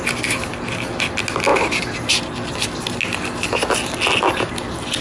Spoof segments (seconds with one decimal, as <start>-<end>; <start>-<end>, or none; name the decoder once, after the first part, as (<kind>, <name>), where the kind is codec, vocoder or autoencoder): none